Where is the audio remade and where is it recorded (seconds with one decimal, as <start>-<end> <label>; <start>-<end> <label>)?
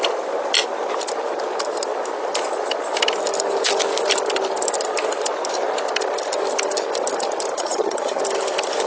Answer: 0.0-7.5 recorded; 7.5-8.2 remade; 8.2-8.9 recorded